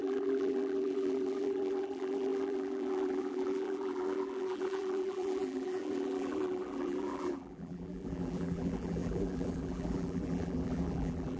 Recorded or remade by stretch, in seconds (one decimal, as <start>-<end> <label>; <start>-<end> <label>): 0.0-11.4 remade